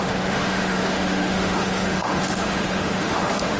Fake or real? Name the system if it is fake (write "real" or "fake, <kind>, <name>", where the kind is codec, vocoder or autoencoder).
fake, autoencoder, DAC-VAE